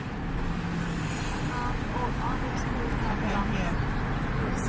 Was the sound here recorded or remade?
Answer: recorded